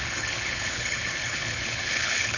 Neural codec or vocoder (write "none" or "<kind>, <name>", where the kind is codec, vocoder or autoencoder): codec, HILCodec